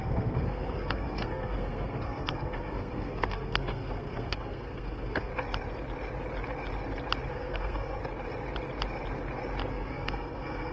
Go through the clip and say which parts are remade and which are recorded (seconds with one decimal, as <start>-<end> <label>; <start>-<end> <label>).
0.0-5.3 remade; 5.3-7.3 recorded; 7.3-8.0 remade; 8.0-9.7 recorded; 9.7-10.7 remade